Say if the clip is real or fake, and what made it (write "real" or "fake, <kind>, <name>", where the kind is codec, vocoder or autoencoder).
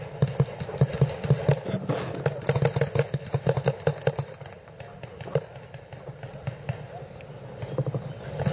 real